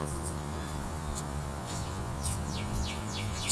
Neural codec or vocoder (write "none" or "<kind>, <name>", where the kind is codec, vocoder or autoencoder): vocoder, Vocos